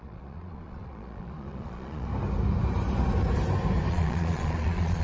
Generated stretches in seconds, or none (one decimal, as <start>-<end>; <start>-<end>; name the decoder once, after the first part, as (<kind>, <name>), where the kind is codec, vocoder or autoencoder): 0.0-2.1 (vocoder, Vocos); 3.9-5.0